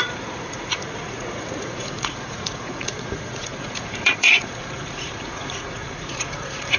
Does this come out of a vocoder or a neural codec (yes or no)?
yes